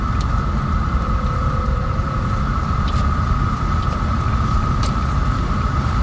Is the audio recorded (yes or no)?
no